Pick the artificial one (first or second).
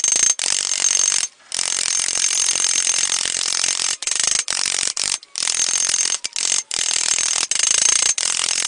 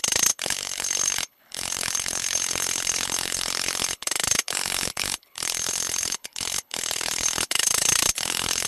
second